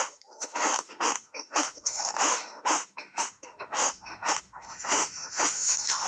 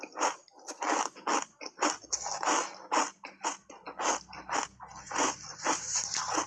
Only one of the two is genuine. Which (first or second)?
second